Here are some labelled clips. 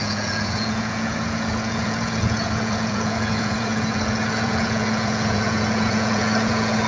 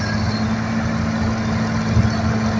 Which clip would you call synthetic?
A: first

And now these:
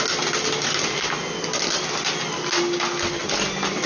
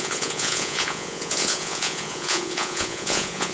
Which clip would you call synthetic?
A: second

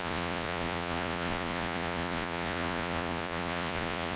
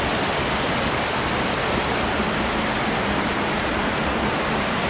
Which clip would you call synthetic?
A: first